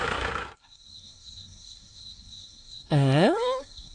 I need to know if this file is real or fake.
fake